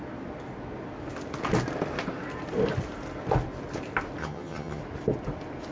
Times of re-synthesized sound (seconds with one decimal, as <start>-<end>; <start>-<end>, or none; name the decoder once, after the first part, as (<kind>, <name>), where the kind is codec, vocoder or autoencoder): 4.2-4.8 (vocoder, HiFi-GAN)